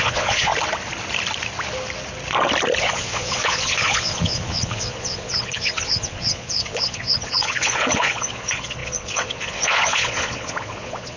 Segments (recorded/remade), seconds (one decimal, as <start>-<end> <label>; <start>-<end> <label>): 0.0-0.5 remade; 0.5-2.8 recorded; 2.8-11.2 remade